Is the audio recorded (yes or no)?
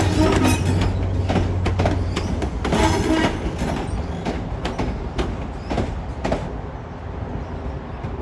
yes